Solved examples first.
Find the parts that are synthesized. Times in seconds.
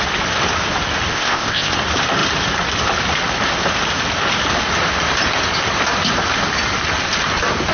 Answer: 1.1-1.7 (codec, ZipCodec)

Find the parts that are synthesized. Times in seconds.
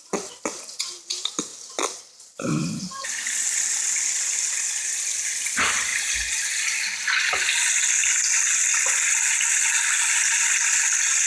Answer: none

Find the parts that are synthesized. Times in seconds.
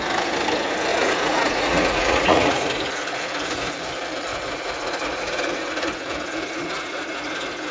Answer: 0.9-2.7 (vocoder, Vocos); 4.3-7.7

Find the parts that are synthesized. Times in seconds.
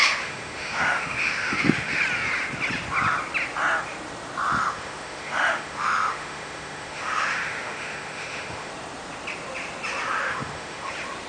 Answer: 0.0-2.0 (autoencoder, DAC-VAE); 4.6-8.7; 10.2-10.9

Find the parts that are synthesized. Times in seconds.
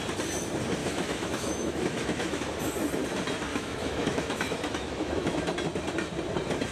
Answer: 0.8-2.4 (autoencoder, DAC-VAE); 3.5-5.4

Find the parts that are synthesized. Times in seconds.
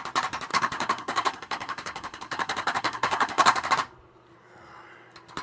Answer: 0.5-3.7 (codec, SNAC)